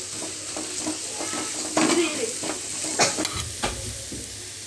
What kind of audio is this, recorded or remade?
recorded